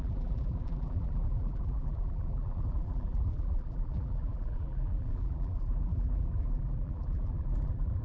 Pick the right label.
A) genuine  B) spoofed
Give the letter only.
B